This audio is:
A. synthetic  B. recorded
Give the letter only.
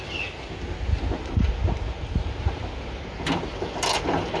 B